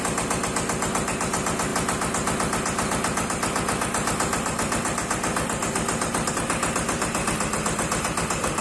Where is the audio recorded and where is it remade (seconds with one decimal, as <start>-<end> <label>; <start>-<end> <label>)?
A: 0.0-8.6 recorded